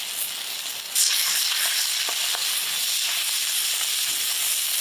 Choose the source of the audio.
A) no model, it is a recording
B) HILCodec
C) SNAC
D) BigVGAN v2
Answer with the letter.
A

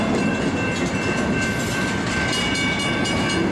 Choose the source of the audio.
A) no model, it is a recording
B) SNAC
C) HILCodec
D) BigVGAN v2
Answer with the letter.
A